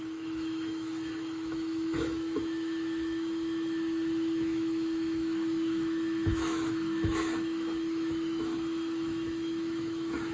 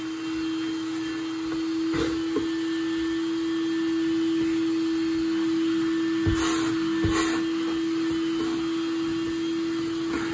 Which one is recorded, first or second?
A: second